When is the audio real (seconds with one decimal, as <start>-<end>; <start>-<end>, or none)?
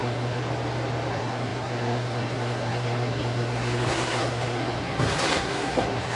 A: 0.4-1.1